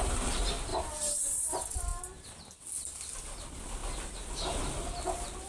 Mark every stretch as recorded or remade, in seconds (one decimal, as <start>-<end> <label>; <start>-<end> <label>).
0.0-5.5 recorded